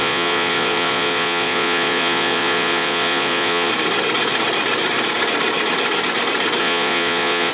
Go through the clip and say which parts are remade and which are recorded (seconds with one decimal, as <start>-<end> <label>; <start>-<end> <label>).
0.0-3.7 remade; 3.7-6.6 recorded; 6.6-7.5 remade